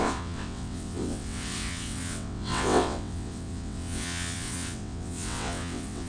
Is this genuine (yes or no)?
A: no